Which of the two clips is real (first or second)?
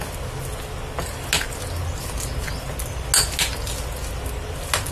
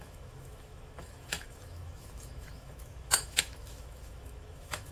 first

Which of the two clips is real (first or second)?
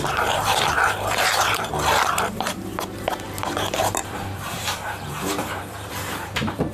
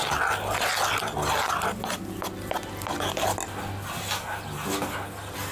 second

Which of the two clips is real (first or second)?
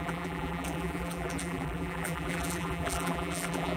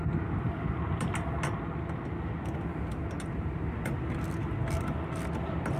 second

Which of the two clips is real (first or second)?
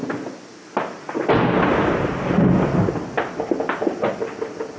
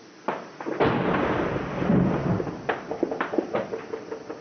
first